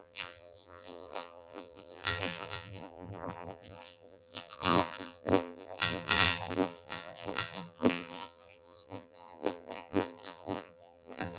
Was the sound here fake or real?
fake